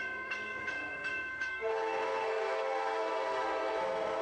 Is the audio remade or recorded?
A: remade